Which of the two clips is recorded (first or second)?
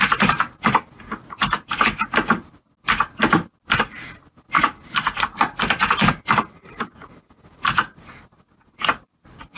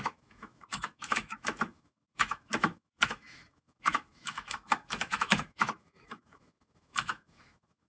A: first